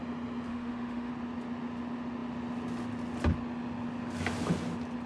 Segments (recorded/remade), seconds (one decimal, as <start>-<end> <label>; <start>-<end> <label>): 0.0-0.5 recorded; 0.5-1.1 remade; 1.1-5.1 recorded